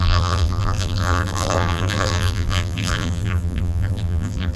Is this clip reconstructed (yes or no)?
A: yes